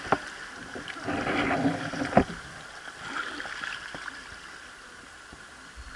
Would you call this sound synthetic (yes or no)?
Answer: no